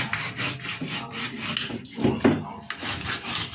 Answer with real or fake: real